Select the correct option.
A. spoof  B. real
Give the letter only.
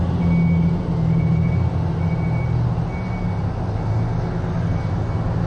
B